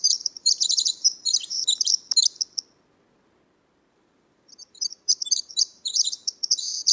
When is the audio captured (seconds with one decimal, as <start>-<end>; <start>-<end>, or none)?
1.9-3.9